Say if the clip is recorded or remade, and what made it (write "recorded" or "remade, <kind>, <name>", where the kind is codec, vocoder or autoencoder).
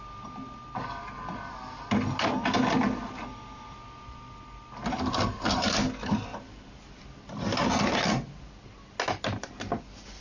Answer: recorded